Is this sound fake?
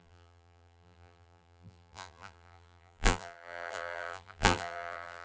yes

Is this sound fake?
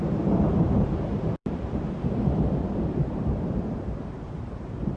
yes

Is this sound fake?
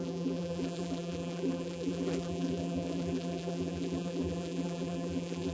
yes